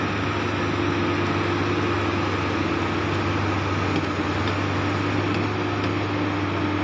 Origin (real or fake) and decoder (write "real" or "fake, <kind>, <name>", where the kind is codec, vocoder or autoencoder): real